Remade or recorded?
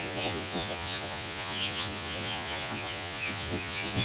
remade